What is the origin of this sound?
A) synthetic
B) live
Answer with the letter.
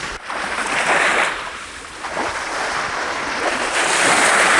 B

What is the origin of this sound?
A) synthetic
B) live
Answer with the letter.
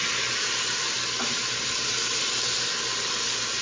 B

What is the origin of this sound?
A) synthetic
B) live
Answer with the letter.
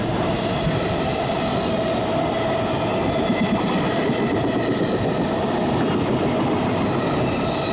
B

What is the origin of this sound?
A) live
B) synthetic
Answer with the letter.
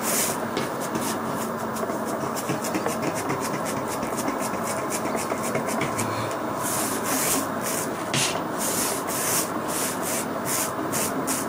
A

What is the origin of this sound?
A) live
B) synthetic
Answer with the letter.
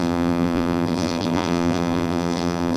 B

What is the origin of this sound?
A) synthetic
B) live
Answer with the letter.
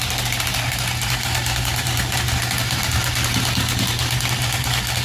B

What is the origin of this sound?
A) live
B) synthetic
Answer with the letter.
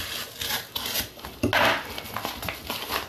A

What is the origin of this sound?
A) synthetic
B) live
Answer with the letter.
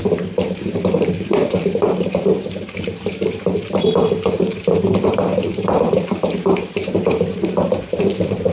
A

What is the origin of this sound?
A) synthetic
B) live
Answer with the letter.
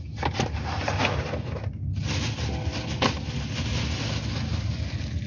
B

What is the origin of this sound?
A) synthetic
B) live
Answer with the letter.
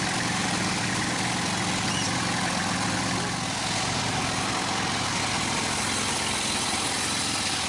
B